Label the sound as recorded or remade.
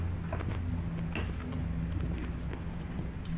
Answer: recorded